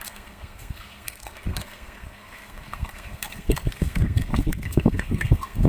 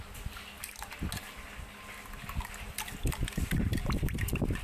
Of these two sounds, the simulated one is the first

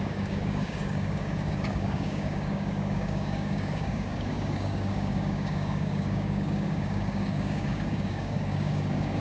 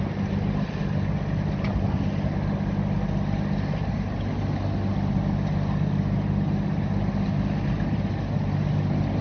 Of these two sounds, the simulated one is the first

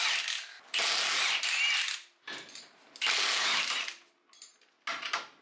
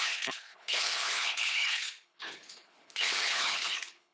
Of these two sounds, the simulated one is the second